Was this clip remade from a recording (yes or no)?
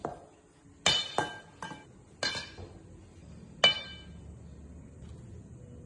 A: no